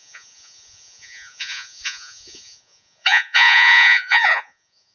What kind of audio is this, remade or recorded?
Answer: remade